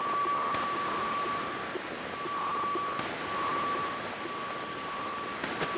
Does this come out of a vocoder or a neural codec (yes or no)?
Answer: no